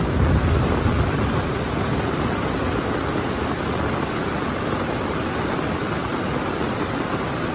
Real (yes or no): yes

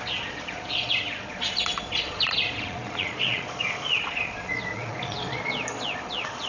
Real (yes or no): no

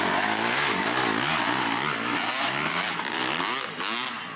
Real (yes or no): yes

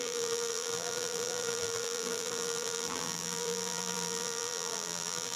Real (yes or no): no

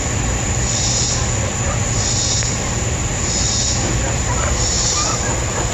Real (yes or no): yes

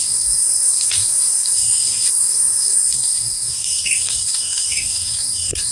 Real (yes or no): no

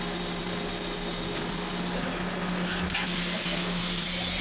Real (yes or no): yes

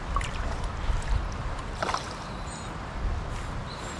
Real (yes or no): yes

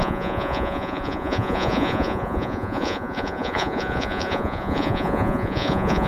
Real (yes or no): no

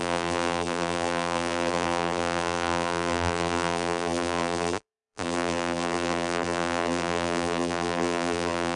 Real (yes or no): no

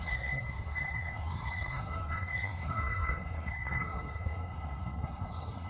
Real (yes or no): no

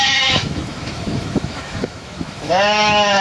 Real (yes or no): no